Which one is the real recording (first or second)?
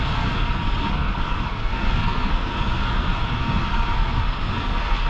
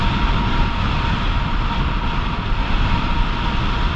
second